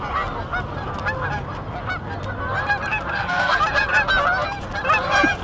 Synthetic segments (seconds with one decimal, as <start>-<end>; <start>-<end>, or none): 3.1-3.6